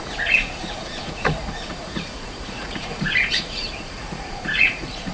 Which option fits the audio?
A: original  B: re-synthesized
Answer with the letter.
B